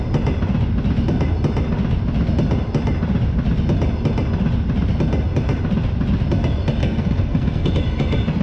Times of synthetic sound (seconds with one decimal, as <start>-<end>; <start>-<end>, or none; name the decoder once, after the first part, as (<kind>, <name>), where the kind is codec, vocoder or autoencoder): 6.8-7.7 (codec, SNAC)